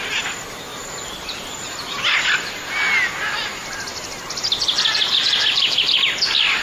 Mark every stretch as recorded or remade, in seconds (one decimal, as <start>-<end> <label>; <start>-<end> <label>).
0.0-0.7 recorded; 0.7-2.0 remade; 2.0-6.6 recorded